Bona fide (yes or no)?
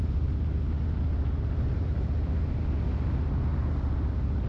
yes